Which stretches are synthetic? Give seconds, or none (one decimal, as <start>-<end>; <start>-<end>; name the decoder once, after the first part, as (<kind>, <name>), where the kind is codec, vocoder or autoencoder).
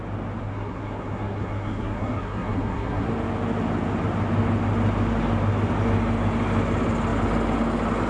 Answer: 0.4-3.1 (codec, SNAC)